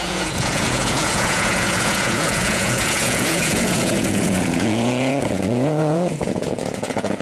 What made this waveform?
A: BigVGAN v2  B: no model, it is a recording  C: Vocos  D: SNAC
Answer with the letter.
C